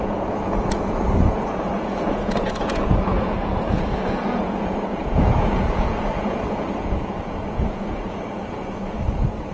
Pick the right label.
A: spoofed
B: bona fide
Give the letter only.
A